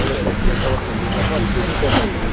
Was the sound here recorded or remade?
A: recorded